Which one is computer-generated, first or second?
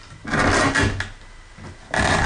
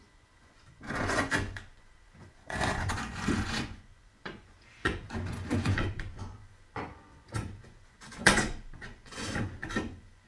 second